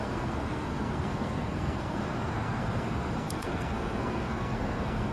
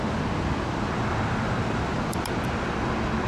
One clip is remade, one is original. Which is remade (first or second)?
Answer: first